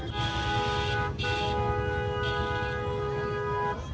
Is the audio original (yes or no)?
yes